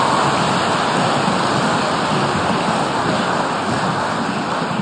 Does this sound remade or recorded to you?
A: recorded